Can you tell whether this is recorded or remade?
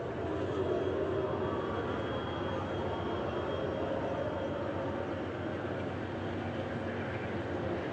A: recorded